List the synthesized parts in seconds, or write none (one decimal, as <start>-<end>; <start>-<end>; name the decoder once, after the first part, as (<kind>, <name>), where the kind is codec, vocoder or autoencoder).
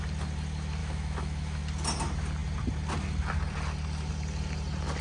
0.8-1.6 (autoencoder, DAC-VAE)